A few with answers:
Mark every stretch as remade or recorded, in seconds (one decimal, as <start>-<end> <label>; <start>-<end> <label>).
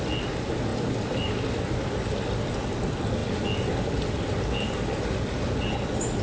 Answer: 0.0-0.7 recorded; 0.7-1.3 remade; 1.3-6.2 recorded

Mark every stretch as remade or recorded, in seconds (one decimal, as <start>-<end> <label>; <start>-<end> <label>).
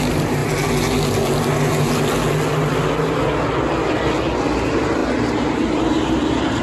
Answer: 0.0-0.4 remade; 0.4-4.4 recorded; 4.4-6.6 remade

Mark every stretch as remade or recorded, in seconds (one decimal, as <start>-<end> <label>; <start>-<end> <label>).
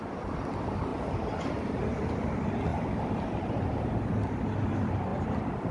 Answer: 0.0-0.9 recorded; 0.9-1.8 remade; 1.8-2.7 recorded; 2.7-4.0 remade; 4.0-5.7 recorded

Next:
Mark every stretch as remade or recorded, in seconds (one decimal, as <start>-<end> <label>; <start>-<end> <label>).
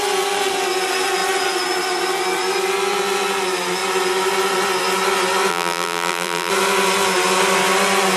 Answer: 0.0-5.5 recorded; 5.5-6.5 remade; 6.5-8.2 recorded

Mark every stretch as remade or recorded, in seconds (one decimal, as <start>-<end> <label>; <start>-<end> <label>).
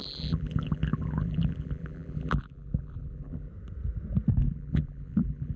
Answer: 0.0-3.5 remade; 3.5-4.4 recorded; 4.4-5.6 remade